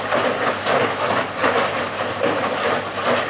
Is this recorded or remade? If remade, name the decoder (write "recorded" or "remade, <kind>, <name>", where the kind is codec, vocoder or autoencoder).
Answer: recorded